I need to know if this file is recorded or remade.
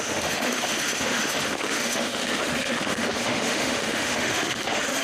remade